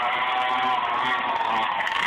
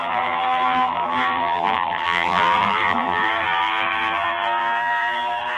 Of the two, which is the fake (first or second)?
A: second